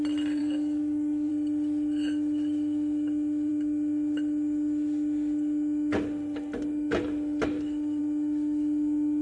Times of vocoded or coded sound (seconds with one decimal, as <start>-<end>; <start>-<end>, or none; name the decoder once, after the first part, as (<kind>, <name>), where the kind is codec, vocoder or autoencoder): 0.4-1.3 (codec, DAC)